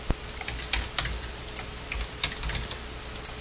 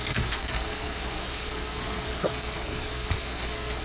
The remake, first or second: second